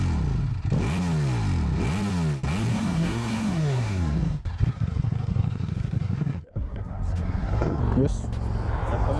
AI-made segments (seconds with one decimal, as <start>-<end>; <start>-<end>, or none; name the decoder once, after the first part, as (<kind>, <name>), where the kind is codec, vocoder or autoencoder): 2.7-7.8 (codec, SNAC)